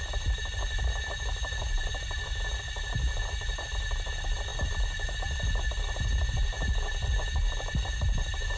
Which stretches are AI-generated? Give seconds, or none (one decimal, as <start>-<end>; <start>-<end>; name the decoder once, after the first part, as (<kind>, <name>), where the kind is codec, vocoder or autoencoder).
4.5-5.1 (vocoder, BigVGAN v2)

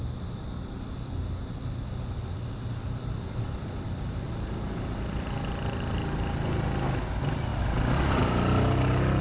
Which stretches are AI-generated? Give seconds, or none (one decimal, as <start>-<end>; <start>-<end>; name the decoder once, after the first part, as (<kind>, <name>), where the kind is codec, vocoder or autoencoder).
none

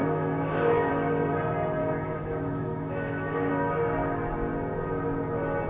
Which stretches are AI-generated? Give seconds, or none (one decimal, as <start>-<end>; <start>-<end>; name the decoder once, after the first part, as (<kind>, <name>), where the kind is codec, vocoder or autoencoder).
0.0-0.9 (autoencoder, DAC-VAE); 1.8-3.5

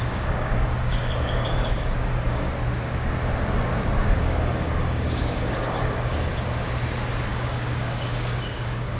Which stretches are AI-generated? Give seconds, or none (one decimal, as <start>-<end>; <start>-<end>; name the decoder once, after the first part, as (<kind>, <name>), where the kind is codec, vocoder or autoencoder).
0.0-2.5 (codec, DAC); 4.2-6.3; 7.3-9.0

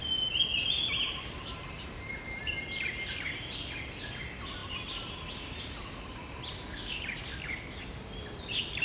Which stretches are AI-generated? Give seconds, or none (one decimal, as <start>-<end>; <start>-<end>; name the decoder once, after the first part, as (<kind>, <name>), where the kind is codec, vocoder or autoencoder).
none